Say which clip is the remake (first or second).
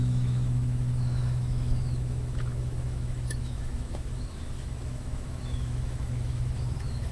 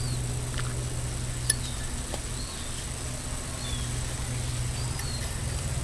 first